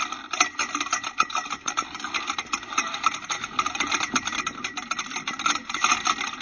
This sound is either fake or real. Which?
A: real